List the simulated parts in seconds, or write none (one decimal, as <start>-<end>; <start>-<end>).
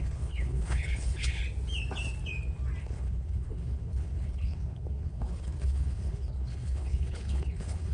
0.0-1.4; 2.8-7.9